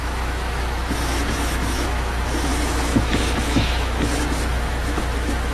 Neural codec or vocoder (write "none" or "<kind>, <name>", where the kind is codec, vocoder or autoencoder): autoencoder, DAC-VAE